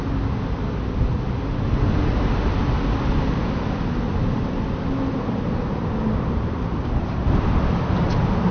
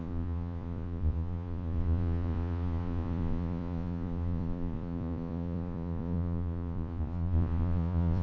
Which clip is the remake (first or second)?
second